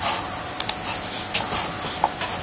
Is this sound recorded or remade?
recorded